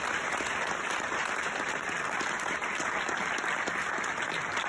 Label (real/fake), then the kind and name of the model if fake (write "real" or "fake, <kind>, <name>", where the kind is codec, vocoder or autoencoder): real